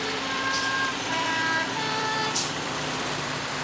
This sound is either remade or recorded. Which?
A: remade